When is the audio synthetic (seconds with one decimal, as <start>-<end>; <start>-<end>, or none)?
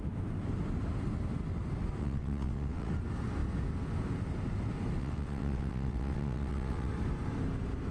2.0-2.9; 5.0-6.9